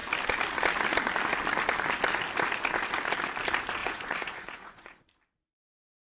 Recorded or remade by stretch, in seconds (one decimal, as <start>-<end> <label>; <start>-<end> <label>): 0.0-3.8 recorded; 3.8-5.0 remade; 5.0-6.2 recorded